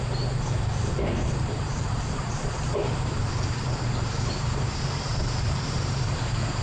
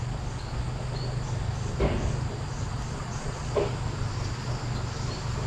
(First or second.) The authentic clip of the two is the second